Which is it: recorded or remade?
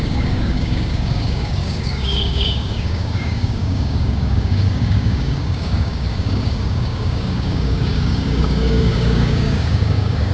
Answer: remade